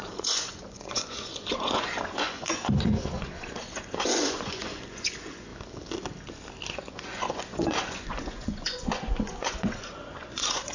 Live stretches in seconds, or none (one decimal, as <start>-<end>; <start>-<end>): 5.5-6.7